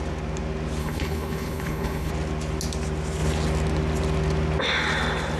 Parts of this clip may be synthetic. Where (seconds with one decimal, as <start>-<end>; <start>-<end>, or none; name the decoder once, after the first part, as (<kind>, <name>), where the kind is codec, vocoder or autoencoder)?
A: 0.8-2.1 (codec, HILCodec)

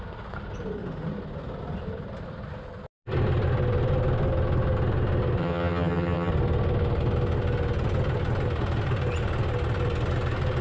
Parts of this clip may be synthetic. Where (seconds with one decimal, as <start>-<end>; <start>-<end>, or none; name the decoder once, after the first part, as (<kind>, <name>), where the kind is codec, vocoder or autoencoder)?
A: 5.4-6.3 (vocoder, HiFi-GAN)

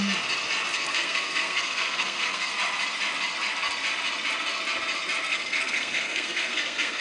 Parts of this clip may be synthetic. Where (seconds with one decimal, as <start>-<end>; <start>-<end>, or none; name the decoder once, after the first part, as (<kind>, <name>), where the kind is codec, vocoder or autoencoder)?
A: 0.7-2.5 (codec, SNAC); 5.3-7.0